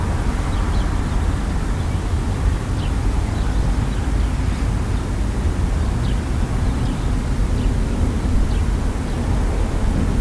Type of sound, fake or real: real